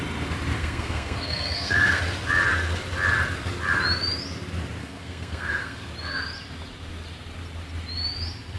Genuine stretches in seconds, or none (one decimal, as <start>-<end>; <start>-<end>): 0.0-0.6; 2.0-4.8; 5.9-8.6